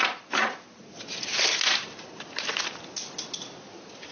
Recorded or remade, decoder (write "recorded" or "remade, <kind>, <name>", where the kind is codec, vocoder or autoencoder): recorded